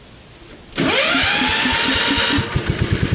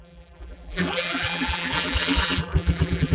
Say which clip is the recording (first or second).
first